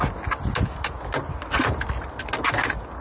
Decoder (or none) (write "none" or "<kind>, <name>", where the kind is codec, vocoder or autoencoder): none